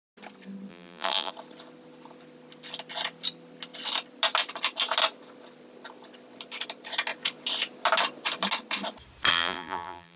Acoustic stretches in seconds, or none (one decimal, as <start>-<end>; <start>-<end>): 0.0-0.7; 1.3-9.3